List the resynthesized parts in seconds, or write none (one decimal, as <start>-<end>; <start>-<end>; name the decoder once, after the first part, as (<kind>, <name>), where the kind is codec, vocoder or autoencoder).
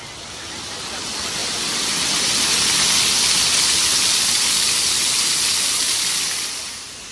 none